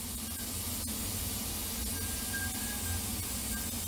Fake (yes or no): no